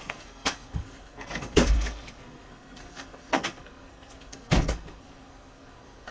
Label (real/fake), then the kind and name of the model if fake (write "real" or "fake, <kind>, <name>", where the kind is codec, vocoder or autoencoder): fake, codec, SNAC